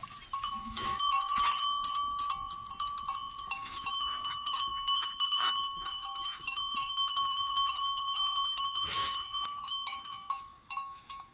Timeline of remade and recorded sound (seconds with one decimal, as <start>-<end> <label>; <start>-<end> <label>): 0.0-0.5 recorded; 0.5-1.5 remade; 1.5-3.5 recorded; 3.5-11.3 remade